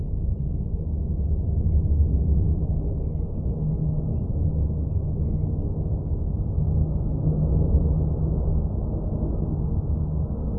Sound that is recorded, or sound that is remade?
recorded